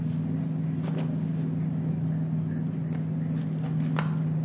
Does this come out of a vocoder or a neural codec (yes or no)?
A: no